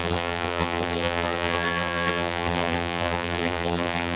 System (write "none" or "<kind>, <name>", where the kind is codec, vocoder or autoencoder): vocoder, BigVGAN v2